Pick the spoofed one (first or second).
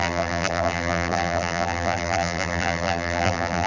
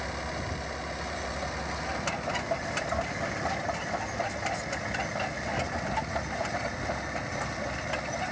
first